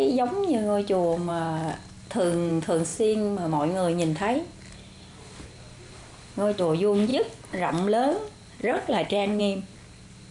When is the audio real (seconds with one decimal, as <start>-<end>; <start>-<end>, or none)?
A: 0.0-8.6; 9.4-10.3